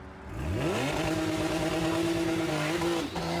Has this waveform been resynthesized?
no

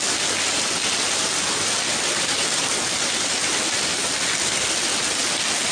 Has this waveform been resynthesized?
no